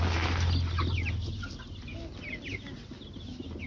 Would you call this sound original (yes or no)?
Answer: yes